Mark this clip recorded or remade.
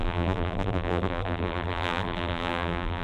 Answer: remade